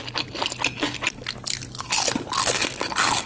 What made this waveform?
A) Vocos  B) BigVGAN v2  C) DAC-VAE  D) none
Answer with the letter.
D